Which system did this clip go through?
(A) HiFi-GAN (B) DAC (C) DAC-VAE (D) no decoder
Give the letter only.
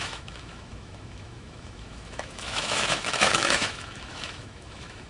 C